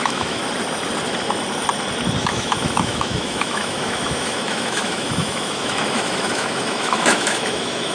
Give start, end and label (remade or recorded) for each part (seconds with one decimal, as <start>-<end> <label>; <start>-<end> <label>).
0.0-0.4 remade; 0.4-2.2 recorded; 2.2-7.9 remade